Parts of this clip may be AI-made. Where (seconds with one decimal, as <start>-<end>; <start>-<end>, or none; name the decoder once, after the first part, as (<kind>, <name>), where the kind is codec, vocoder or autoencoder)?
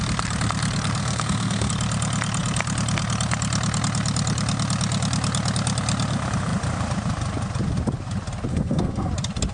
1.0-1.7 (codec, SNAC); 8.5-9.1